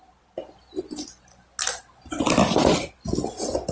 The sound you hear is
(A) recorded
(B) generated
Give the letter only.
A